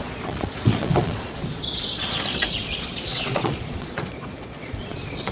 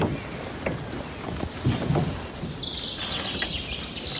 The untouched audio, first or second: second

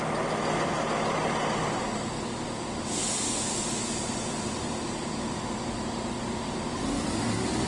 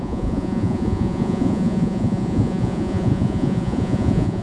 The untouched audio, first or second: first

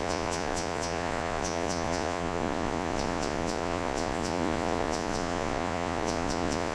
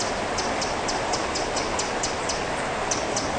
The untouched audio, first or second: second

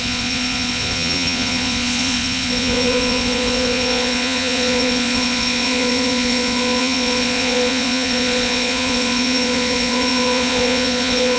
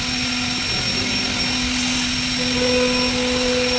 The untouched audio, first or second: second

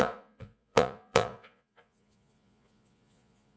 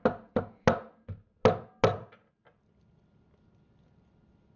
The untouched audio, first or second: second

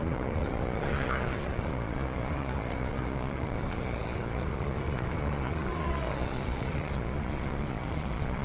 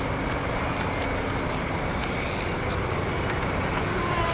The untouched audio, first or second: second